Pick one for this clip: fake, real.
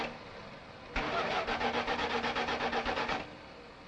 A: real